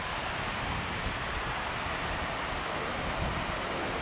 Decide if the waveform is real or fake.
real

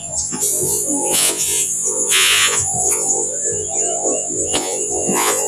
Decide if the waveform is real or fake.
fake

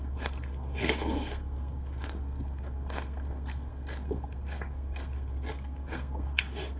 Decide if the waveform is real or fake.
fake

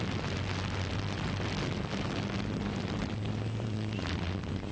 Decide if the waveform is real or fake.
real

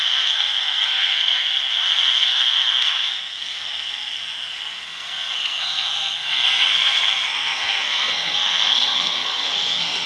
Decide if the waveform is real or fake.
fake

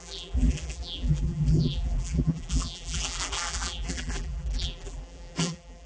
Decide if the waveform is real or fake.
fake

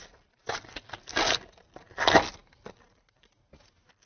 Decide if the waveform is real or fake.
real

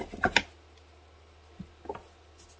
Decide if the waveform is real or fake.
real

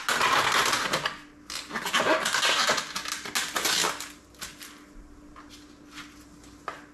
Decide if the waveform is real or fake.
real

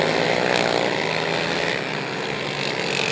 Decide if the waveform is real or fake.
real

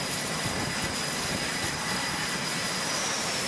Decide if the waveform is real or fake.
real